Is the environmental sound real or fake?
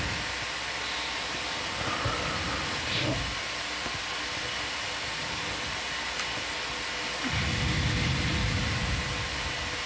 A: real